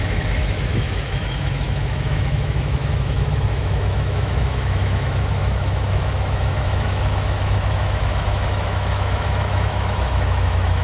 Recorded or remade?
remade